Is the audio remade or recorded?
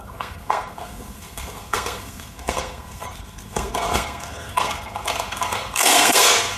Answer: remade